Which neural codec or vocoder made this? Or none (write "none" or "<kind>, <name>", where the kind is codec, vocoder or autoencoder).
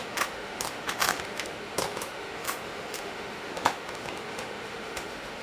autoencoder, DAC-VAE